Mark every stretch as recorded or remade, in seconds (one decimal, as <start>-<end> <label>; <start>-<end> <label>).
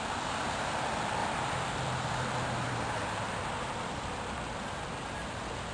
0.0-1.2 recorded; 1.2-2.7 remade; 2.7-5.7 recorded